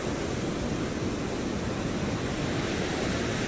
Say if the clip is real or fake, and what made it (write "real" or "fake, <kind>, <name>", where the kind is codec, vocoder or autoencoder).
real